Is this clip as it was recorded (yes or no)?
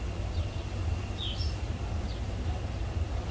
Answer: yes